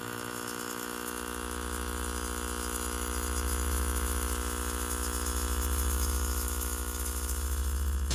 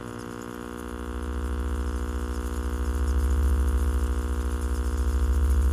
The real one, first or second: second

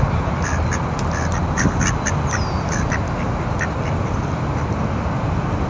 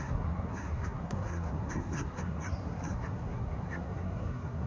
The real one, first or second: first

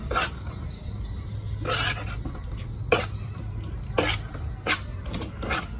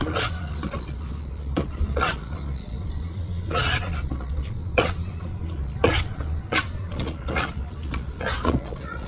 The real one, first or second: first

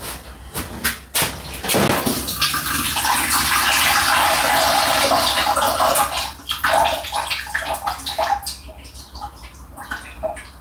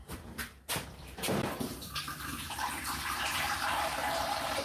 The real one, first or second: first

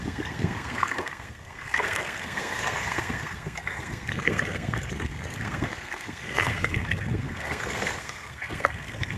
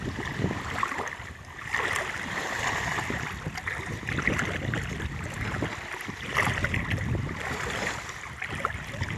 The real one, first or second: second